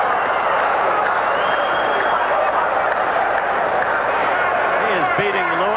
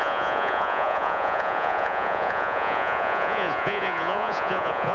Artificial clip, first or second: second